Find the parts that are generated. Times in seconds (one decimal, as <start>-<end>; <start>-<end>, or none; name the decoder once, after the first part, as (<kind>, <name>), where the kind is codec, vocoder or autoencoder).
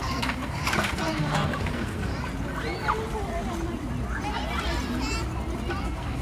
0.0-2.1 (codec, SNAC); 5.8-6.2